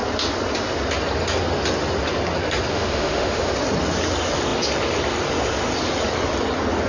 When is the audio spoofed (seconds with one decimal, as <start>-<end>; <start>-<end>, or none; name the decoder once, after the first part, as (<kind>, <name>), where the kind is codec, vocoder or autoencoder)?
2.7-3.5 (autoencoder, DAC-VAE)